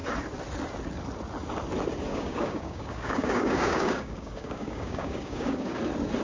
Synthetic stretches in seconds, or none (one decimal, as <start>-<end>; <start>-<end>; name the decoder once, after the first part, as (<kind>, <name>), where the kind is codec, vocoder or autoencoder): 2.1-5.8 (codec, DAC)